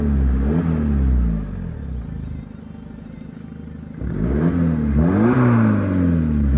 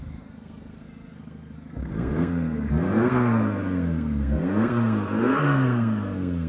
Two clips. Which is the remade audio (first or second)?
second